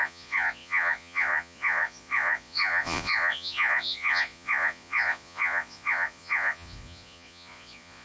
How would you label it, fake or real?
fake